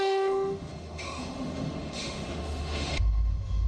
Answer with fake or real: fake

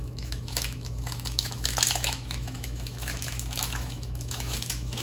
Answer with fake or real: fake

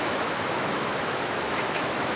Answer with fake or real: fake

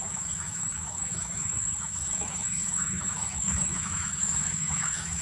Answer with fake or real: fake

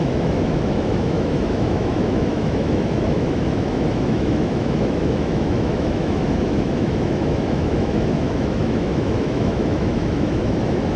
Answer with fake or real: fake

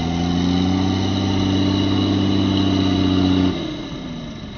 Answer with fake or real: real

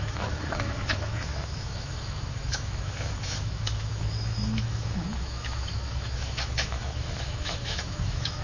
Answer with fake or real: fake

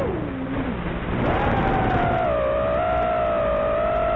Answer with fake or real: real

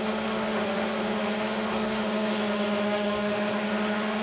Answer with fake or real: fake